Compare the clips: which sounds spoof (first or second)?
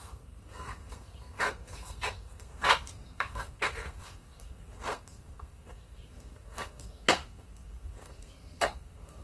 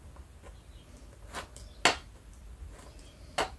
first